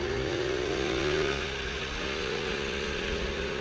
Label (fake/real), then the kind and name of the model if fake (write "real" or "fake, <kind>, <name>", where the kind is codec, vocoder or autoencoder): fake, vocoder, Vocos